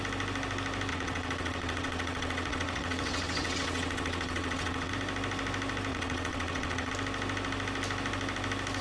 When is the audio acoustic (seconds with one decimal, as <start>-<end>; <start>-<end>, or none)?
0.0-0.9; 4.9-5.9; 6.9-8.8